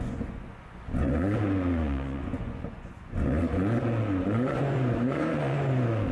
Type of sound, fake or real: fake